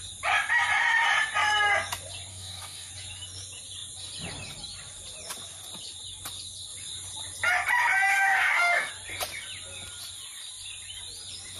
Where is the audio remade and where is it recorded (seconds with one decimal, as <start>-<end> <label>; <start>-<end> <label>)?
0.0-2.3 recorded; 2.3-2.9 remade; 2.9-8.1 recorded; 8.1-8.9 remade; 8.9-11.6 recorded